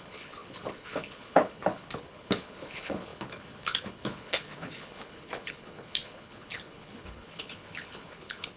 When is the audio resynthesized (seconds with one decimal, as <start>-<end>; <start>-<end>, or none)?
0.0-8.6